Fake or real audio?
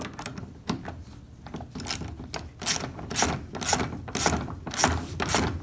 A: real